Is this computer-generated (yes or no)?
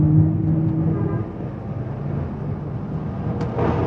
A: no